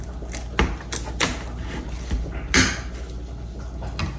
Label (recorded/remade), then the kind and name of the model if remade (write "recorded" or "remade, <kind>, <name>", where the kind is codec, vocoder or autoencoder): recorded